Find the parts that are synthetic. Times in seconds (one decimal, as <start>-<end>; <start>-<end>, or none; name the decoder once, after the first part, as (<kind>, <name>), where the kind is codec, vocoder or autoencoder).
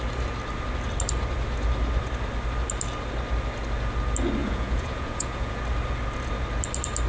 4.4-5.6 (vocoder, Vocos)